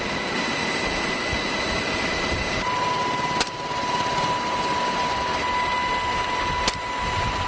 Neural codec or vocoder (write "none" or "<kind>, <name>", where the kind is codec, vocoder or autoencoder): none